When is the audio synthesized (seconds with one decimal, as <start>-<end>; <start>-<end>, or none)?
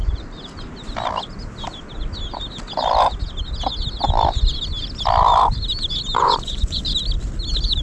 6.2-6.8